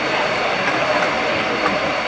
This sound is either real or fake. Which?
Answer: real